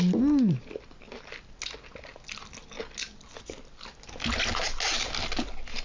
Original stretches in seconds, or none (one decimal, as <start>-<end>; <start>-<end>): 0.0-5.8